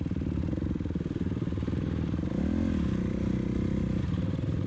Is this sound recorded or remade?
recorded